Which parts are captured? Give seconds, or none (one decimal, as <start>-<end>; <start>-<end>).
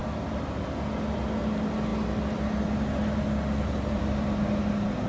0.0-5.1